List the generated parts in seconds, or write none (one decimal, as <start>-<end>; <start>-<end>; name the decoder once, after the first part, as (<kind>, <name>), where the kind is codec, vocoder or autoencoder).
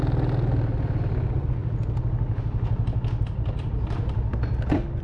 none